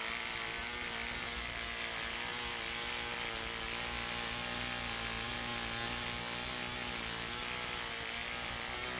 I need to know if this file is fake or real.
real